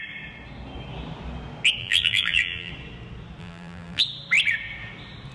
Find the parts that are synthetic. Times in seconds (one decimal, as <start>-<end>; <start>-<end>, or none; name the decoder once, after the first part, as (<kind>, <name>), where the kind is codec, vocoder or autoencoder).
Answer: 1.8-2.7 (vocoder, BigVGAN v2); 3.4-4.0